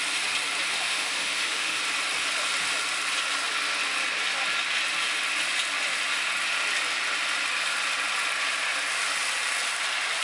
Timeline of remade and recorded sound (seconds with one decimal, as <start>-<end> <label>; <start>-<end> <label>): 0.0-0.7 recorded; 0.7-1.8 remade; 1.8-10.2 recorded